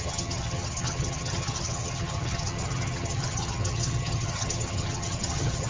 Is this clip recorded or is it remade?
remade